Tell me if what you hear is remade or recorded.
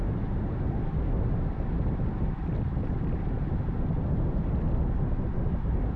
recorded